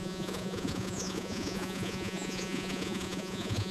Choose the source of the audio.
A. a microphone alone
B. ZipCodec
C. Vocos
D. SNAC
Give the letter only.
C